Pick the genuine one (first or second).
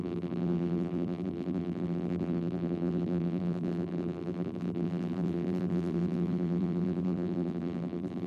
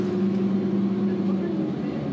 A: second